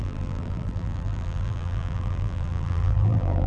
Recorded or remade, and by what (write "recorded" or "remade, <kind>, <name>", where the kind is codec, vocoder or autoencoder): remade, vocoder, BigVGAN v2